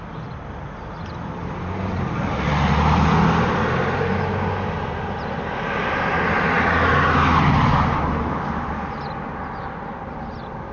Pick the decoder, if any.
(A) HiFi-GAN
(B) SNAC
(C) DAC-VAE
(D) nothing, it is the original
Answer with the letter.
D